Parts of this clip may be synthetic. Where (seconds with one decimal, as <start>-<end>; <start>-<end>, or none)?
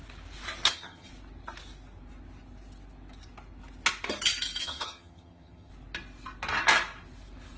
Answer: 0.7-1.1; 4.6-5.7